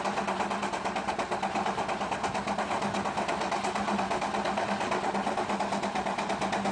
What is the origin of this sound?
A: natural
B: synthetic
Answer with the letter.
A